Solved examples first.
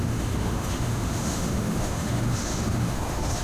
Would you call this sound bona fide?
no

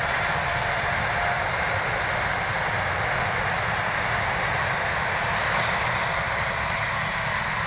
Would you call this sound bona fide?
yes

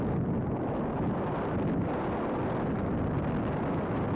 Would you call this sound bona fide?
yes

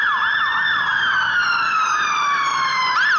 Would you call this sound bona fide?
yes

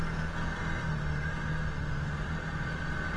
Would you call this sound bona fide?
yes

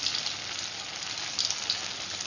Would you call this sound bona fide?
yes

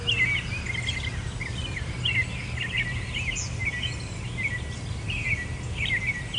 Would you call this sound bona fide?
yes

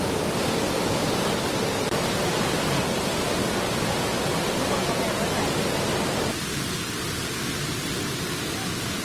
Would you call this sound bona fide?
yes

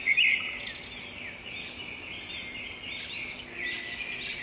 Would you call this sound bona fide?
yes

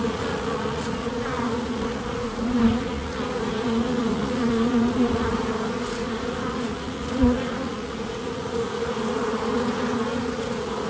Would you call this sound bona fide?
no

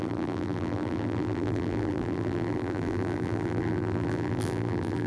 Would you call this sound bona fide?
no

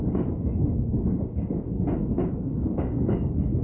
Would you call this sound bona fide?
no